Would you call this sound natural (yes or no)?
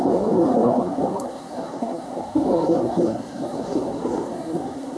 no